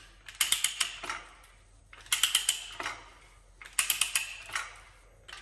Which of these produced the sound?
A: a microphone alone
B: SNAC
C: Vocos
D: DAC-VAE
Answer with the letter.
A